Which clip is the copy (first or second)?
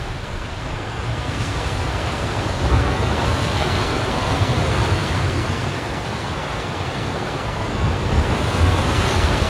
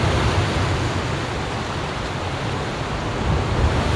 first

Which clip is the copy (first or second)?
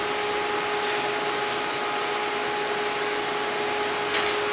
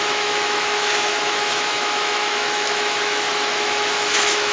second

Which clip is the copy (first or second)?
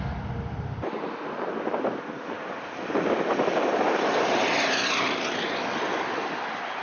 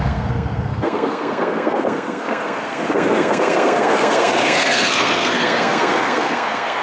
second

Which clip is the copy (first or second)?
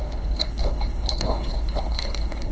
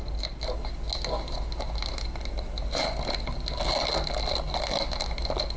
first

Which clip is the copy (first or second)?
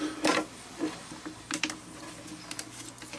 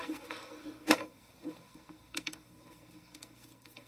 second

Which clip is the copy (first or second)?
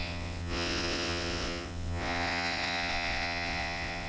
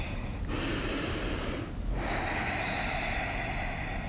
first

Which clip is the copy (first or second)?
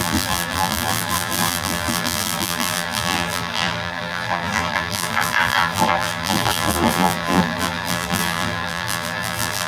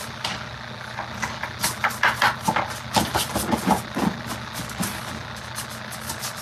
first